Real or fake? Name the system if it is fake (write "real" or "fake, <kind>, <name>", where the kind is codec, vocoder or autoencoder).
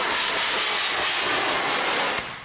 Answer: real